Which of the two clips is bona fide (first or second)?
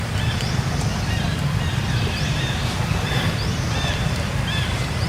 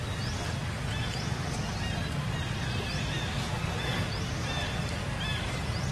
second